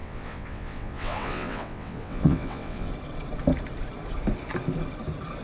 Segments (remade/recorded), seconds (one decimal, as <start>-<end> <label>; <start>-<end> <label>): 0.0-2.9 remade; 2.9-5.4 recorded